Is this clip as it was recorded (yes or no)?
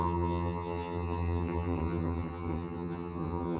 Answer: no